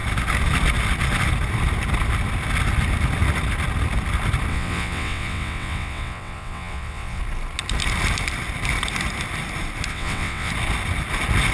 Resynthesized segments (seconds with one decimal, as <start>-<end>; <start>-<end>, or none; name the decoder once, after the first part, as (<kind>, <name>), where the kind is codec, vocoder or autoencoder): 4.5-7.2 (vocoder, WaveNeXt); 9.9-10.5